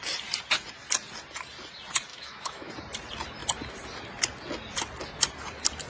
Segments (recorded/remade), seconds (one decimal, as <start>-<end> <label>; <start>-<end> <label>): 0.0-2.1 recorded; 2.1-2.7 remade; 2.7-5.9 recorded